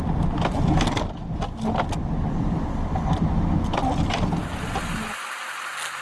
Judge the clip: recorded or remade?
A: recorded